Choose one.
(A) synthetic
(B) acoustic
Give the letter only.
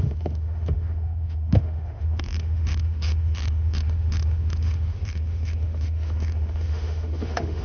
A